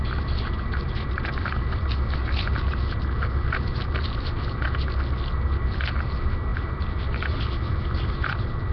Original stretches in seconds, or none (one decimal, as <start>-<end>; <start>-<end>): 0.0-8.7